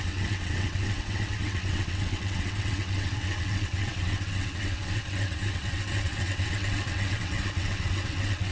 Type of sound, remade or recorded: remade